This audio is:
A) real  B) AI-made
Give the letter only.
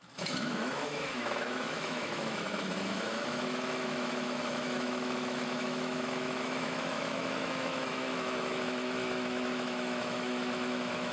B